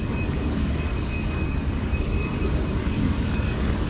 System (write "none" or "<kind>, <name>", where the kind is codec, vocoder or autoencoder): codec, DAC